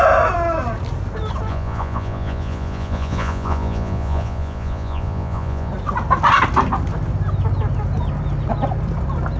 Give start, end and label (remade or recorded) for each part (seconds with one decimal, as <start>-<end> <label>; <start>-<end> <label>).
0.0-1.5 recorded; 1.5-5.7 remade; 5.7-9.4 recorded